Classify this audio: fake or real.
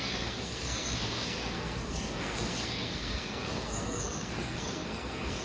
fake